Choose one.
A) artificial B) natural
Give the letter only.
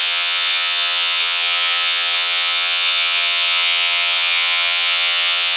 A